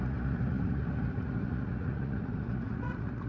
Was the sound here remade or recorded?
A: remade